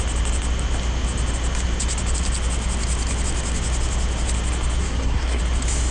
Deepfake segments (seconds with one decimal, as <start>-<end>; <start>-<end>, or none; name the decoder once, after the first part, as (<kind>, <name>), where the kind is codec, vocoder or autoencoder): 4.8-5.4 (codec, SNAC)